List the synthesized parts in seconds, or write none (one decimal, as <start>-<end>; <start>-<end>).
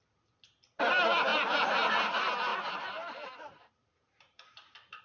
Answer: 2.5-5.0